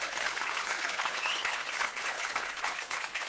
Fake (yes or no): yes